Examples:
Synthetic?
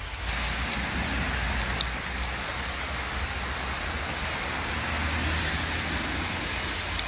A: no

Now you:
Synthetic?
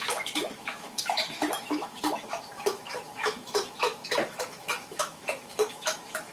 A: yes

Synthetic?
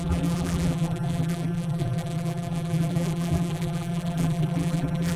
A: yes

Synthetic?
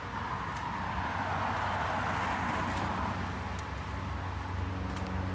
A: no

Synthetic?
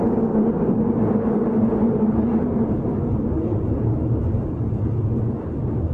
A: no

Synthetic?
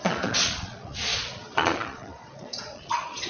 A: yes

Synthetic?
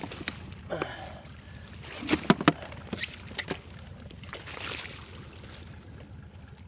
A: no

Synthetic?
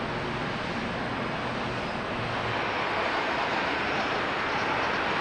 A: no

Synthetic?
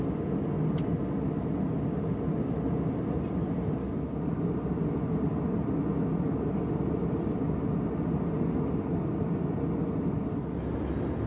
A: no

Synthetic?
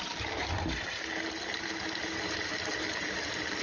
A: no